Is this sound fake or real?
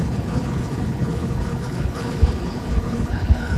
fake